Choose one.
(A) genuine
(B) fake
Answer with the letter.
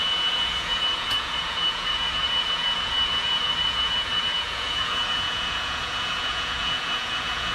B